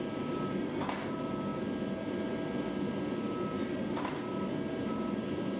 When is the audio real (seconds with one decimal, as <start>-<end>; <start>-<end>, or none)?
0.0-5.6